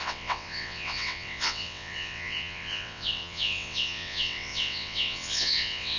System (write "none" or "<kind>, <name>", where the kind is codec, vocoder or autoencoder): vocoder, WaveNeXt